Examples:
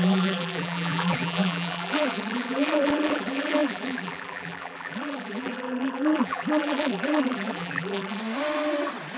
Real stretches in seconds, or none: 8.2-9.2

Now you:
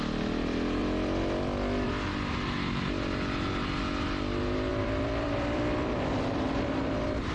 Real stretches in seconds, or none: 0.0-0.8; 1.9-4.7; 6.8-7.3

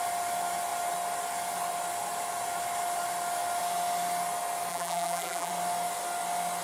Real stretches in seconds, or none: 0.0-4.7; 5.5-6.6

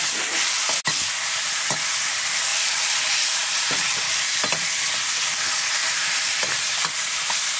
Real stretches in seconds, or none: 0.0-2.5; 4.2-5.8; 6.6-7.6

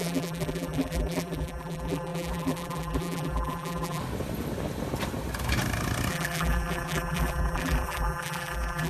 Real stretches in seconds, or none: 4.0-6.1